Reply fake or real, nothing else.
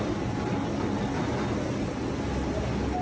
real